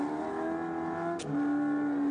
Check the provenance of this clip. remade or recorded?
recorded